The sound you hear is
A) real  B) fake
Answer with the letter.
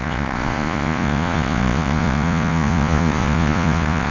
B